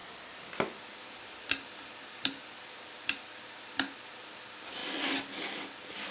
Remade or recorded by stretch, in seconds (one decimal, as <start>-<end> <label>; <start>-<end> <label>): 0.0-6.1 remade